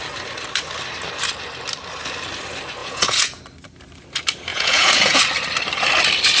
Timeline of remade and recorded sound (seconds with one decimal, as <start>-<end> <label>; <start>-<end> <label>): 0.0-2.8 recorded; 2.8-3.4 remade; 3.4-4.5 recorded; 4.5-5.2 remade; 5.2-6.4 recorded